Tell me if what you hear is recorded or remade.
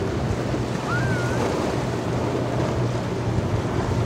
recorded